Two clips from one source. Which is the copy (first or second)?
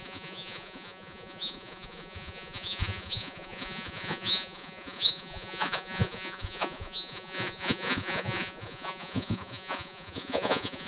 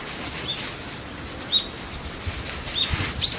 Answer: first